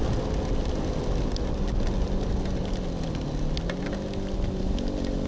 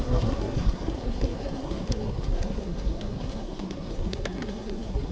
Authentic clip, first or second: first